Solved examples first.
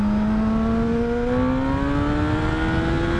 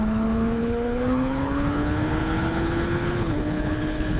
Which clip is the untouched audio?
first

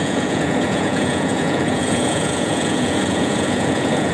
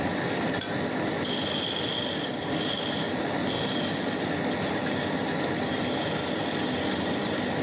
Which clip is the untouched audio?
second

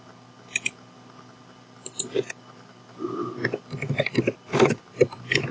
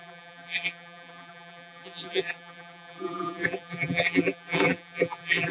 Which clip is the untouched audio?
first